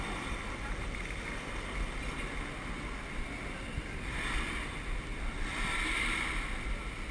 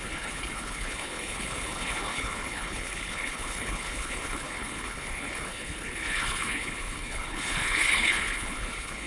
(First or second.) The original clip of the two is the first